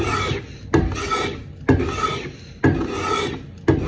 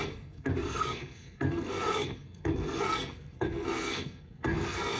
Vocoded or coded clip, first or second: second